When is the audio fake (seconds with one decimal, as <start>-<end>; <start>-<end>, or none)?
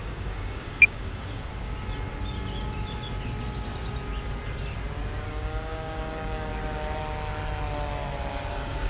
0.0-1.5; 5.3-6.5; 8.5-8.9